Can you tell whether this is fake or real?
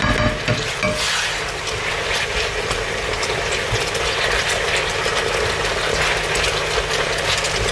real